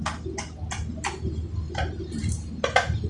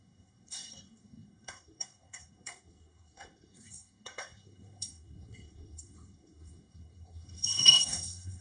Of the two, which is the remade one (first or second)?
second